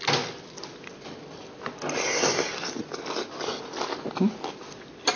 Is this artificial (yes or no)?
no